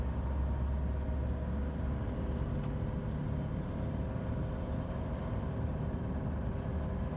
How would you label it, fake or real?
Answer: real